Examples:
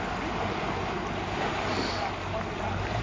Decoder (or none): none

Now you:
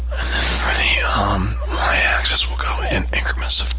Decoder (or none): none